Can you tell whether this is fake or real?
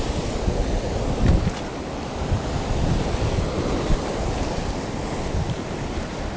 real